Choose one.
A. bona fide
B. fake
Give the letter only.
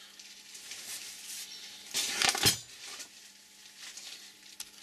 A